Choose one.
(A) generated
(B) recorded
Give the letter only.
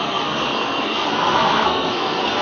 A